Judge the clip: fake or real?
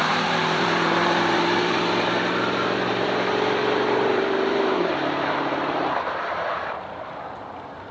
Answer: fake